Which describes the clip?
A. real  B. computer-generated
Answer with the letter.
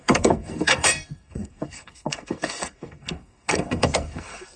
B